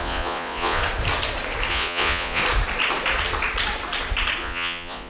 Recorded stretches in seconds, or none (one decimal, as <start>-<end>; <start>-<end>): 0.8-1.7; 2.4-4.4